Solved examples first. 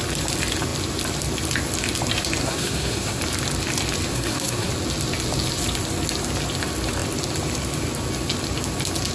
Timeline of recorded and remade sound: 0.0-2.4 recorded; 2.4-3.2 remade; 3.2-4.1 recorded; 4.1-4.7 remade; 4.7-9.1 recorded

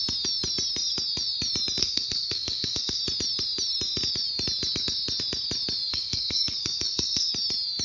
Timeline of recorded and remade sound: 0.0-1.8 recorded; 1.8-3.0 remade; 3.0-5.9 recorded; 5.9-7.3 remade; 7.3-7.8 recorded

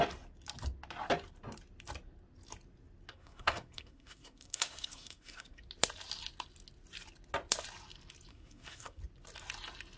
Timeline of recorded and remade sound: 0.0-3.1 recorded; 3.1-5.6 remade; 5.6-8.3 recorded; 8.3-9.0 remade; 9.0-10.0 recorded

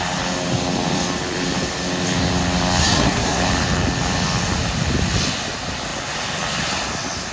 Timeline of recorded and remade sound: 0.0-2.8 recorded; 2.8-3.4 remade; 3.4-7.3 recorded

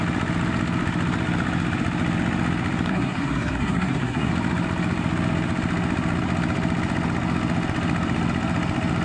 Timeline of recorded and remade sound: 0.0-2.9 recorded; 2.9-4.3 remade; 4.3-9.0 recorded

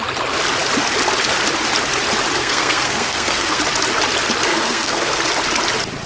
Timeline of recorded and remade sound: 0.0-2.4 recorded; 2.4-3.6 remade; 3.6-4.5 recorded; 4.5-5.2 remade; 5.2-6.1 recorded